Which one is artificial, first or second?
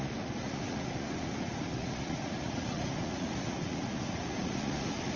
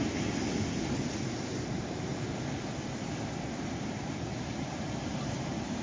first